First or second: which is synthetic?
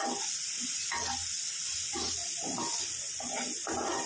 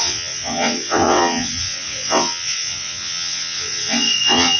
second